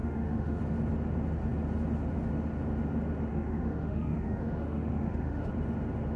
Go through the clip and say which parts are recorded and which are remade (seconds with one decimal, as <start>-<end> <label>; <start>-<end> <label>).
0.0-0.6 remade; 0.6-3.3 recorded; 3.3-5.5 remade; 5.5-6.2 recorded